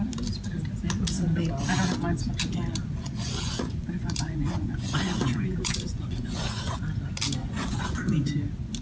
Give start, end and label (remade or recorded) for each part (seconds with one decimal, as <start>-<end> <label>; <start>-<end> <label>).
0.0-3.0 recorded; 3.0-6.8 remade; 6.8-7.4 recorded; 7.4-8.3 remade; 8.3-8.8 recorded